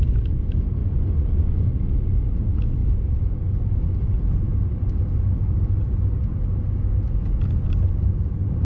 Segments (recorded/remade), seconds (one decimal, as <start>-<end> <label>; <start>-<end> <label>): 0.0-0.8 recorded; 0.8-1.7 remade; 1.7-8.6 recorded